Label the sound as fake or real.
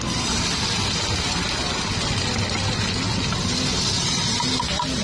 real